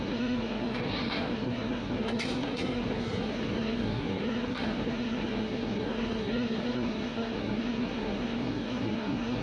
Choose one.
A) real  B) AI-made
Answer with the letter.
B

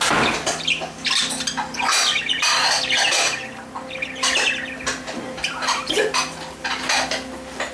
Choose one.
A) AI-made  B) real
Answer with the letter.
B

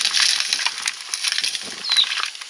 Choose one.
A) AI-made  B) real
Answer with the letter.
B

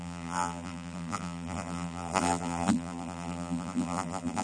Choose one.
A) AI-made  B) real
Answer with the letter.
A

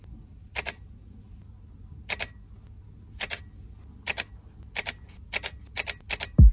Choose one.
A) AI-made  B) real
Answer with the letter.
B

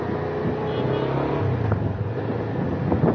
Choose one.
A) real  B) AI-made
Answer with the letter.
A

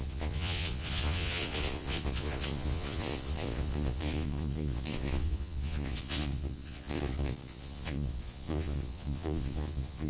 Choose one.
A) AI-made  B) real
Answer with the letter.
A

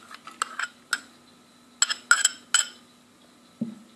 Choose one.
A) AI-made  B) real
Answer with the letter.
B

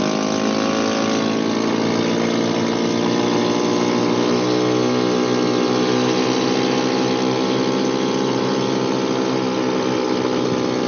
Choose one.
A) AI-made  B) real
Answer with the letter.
B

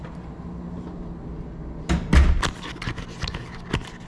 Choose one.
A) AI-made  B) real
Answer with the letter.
B